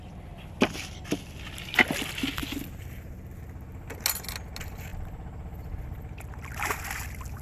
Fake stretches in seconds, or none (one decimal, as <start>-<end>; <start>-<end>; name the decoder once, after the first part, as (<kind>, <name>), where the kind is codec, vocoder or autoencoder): none